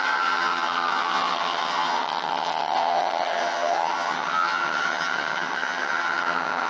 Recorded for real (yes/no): no